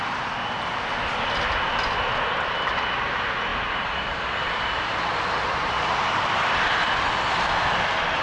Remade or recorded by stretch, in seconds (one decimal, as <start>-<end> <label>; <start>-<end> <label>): 0.0-3.5 recorded; 3.5-6.3 remade; 6.3-8.2 recorded